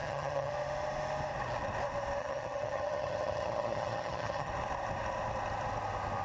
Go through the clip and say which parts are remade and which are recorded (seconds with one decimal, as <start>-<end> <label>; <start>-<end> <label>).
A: 0.0-0.5 remade; 0.5-2.2 recorded; 2.2-4.5 remade; 4.5-6.2 recorded